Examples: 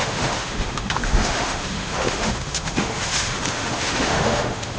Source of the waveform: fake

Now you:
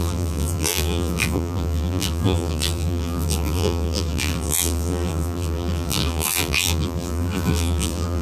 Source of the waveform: fake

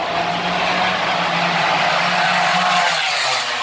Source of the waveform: real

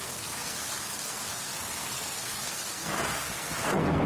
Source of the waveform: fake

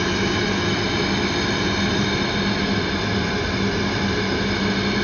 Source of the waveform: real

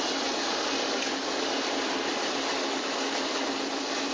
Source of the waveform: real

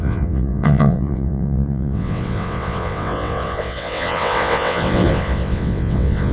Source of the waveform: fake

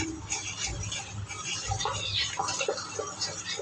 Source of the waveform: real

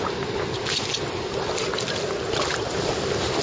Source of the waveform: real